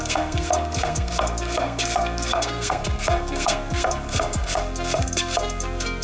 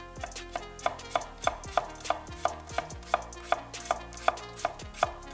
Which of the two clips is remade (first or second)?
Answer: first